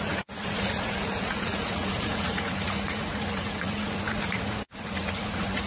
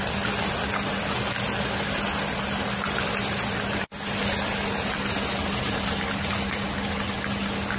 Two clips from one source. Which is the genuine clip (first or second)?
second